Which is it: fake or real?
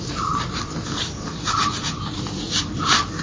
real